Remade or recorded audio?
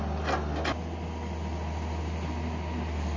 recorded